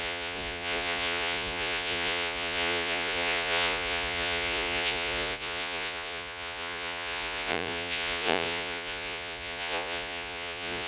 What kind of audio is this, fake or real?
fake